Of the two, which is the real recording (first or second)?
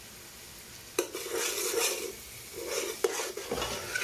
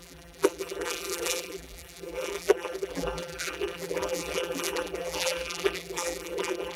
first